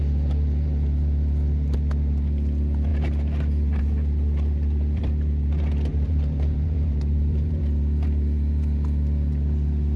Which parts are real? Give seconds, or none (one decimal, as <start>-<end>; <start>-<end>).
0.0-5.9; 7.6-10.0